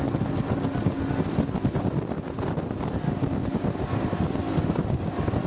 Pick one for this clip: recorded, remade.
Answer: recorded